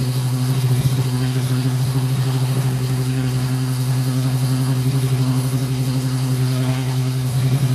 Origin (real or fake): fake